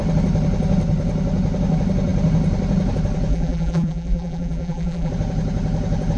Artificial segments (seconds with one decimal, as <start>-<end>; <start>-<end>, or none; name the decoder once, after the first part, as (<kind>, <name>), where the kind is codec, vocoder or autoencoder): 3.3-5.1 (vocoder, BigVGAN v2)